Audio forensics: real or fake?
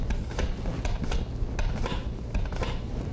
real